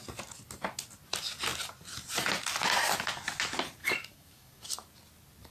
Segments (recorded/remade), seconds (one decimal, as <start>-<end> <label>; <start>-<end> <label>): 0.0-3.8 recorded; 3.8-4.7 remade; 4.7-5.5 recorded